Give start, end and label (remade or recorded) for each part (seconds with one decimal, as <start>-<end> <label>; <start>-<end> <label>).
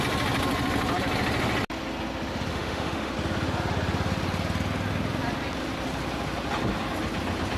0.0-2.5 recorded; 2.5-3.1 remade; 3.1-7.6 recorded